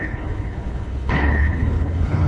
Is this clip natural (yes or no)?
no